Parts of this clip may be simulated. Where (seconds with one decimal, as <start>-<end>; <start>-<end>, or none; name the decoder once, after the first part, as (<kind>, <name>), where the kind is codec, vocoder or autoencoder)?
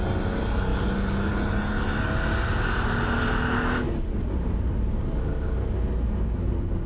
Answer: none